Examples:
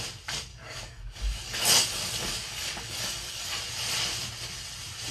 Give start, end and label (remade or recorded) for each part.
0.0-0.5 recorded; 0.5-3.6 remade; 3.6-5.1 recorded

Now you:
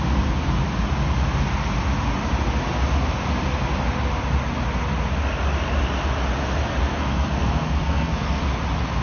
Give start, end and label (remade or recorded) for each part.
0.0-6.8 recorded; 6.8-8.4 remade; 8.4-9.0 recorded

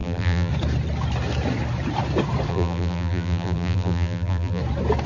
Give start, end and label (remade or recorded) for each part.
0.0-0.5 remade; 0.5-2.5 recorded; 2.5-4.6 remade; 4.6-5.1 recorded

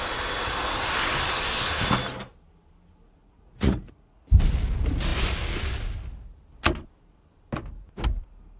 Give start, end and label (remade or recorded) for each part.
0.0-3.2 recorded; 3.2-4.2 remade; 4.2-8.6 recorded

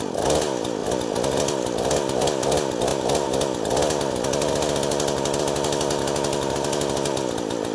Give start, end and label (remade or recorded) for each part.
0.0-7.7 recorded